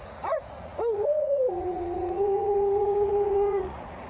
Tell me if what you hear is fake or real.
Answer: fake